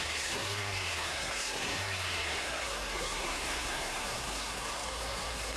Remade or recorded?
remade